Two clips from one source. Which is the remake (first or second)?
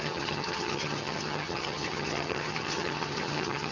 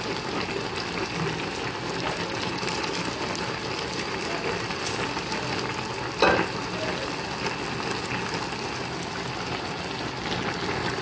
first